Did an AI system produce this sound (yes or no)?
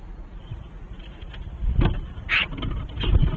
no